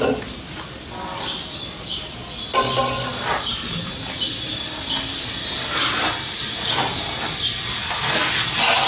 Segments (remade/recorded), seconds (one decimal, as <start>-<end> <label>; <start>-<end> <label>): 0.0-7.8 recorded; 7.8-8.3 remade; 8.3-8.9 recorded